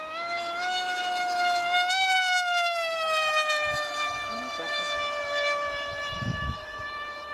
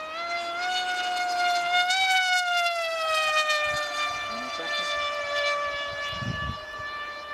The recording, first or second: second